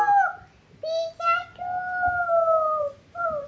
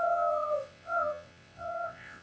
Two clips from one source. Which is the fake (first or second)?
second